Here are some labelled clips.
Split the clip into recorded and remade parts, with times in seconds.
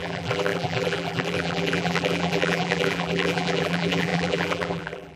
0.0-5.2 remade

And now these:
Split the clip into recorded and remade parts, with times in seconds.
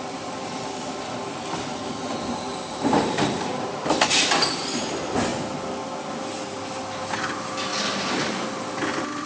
0.0-2.5 recorded; 2.5-4.3 remade; 4.3-9.3 recorded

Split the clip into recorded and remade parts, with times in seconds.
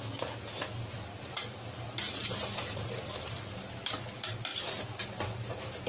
0.0-2.4 recorded; 2.4-3.9 remade; 3.9-4.5 recorded; 4.5-5.0 remade; 5.0-5.9 recorded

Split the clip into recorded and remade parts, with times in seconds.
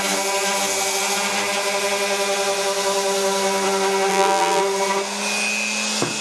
0.0-4.1 recorded; 4.1-4.6 remade; 4.6-6.2 recorded